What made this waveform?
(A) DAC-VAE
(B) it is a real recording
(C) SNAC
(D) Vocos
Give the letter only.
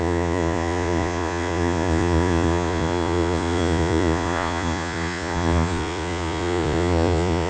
D